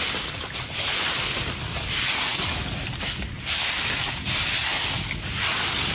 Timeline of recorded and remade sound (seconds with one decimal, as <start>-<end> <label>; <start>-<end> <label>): 0.0-5.9 recorded